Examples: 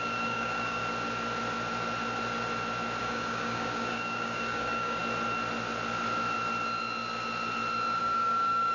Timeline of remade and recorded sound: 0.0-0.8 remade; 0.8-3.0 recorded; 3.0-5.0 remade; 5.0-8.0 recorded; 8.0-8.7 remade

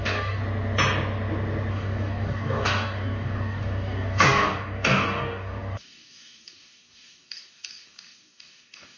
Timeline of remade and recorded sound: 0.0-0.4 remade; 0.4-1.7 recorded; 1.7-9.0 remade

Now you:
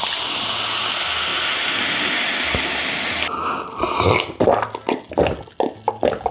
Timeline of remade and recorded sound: 0.0-6.3 recorded